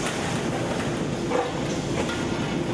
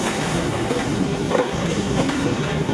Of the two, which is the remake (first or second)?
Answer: second